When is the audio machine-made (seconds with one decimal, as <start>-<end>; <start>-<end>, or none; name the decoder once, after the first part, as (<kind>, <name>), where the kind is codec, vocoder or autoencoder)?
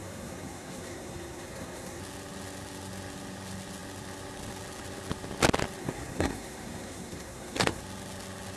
0.0-2.0 (codec, SNAC); 5.8-7.8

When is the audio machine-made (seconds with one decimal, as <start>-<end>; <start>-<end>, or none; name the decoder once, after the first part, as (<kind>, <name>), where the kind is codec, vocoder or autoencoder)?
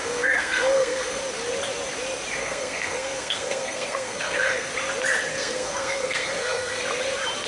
0.0-1.2 (codec, SNAC); 2.4-4.7; 5.3-6.8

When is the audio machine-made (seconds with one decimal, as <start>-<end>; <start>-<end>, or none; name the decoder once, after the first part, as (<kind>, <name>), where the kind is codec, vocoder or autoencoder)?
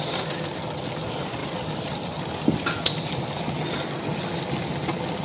none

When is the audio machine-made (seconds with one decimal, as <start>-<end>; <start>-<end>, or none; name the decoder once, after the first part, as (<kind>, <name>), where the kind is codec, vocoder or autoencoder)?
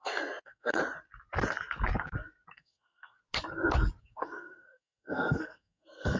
0.0-0.8 (codec, SNAC); 2.5-3.2; 4.0-6.2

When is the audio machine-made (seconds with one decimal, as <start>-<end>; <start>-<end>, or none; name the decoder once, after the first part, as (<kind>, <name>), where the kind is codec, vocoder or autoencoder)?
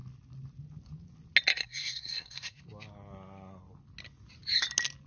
1.5-2.6 (codec, SNAC)